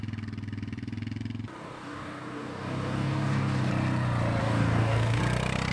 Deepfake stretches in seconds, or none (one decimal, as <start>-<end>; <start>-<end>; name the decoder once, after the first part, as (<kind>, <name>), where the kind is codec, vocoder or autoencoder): 1.6-3.7 (codec, DAC); 4.4-5.2